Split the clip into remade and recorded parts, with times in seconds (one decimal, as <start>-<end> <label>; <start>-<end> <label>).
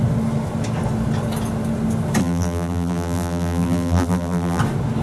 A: 0.0-2.2 recorded; 2.2-4.6 remade; 4.6-5.0 recorded